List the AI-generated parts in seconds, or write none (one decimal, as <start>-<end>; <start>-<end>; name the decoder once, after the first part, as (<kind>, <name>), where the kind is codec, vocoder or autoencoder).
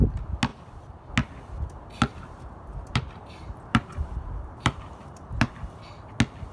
0.5-1.1 (vocoder, BigVGAN v2); 2.1-5.5